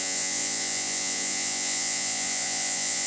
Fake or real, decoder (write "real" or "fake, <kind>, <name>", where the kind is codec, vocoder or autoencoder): fake, vocoder, Vocos